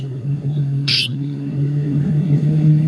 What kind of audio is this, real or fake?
fake